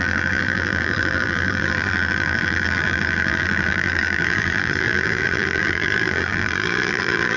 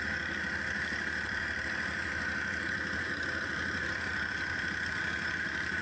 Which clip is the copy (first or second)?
first